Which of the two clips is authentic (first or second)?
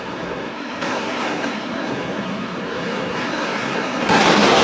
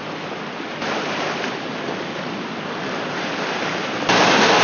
second